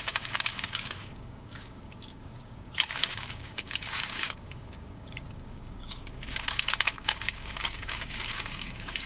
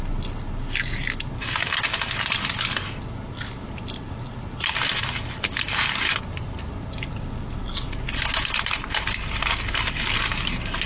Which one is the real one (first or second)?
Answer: second